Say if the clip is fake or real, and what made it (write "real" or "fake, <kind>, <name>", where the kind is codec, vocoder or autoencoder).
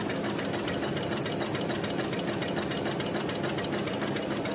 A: real